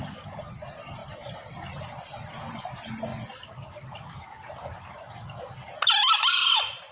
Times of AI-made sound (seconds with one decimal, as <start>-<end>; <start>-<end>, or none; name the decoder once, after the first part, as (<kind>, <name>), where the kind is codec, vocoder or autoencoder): none